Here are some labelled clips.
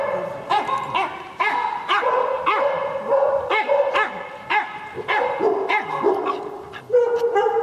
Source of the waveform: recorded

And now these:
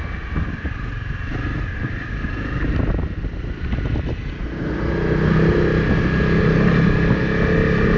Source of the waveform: recorded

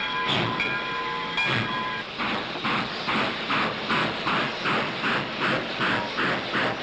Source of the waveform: recorded